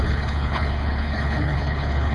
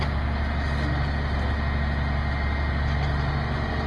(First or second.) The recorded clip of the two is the second